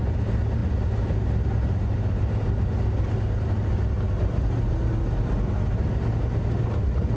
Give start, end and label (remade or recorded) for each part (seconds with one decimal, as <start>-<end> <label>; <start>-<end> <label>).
0.0-7.2 recorded